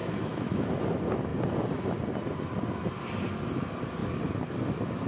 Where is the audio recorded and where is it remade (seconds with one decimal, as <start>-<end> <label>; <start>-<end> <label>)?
0.0-0.7 remade; 0.7-5.1 recorded